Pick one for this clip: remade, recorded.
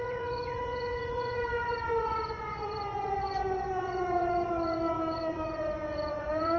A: remade